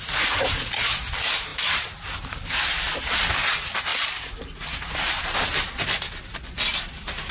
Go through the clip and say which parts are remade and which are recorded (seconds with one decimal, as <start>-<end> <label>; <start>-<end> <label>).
0.0-7.3 recorded